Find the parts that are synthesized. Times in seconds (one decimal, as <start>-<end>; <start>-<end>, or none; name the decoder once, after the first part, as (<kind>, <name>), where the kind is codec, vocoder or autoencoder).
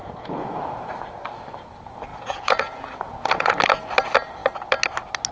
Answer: 0.0-0.9 (vocoder, Vocos); 2.1-3.6